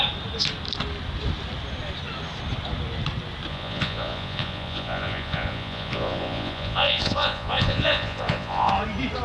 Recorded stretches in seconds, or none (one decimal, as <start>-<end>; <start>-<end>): 0.0-3.5; 8.7-9.2